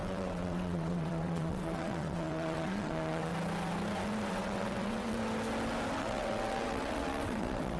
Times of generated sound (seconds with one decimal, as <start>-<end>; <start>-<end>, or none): 0.0-3.3; 4.3-5.2; 6.0-7.8